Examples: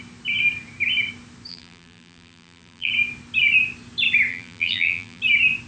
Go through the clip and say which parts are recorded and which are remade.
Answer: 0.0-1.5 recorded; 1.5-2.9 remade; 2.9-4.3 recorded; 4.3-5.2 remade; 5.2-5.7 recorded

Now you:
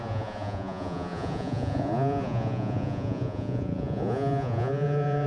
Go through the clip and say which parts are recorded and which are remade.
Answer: 0.0-5.3 remade

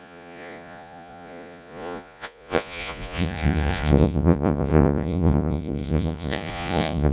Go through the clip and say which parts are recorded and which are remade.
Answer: 0.0-7.1 remade

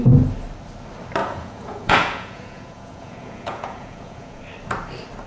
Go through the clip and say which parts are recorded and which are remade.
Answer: 0.0-1.2 recorded; 1.2-4.4 remade; 4.4-5.3 recorded

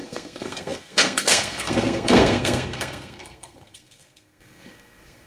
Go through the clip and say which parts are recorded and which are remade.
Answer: 0.0-5.3 remade

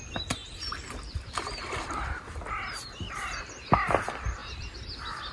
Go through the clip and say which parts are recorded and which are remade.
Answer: 0.0-5.3 recorded